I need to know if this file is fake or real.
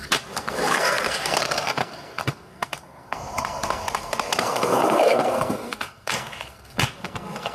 fake